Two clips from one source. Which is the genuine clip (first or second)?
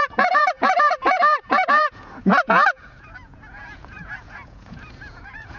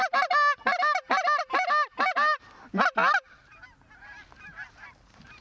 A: second